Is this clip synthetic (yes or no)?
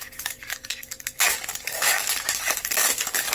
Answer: yes